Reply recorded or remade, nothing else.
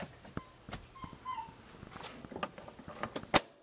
recorded